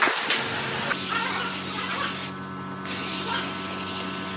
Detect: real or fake real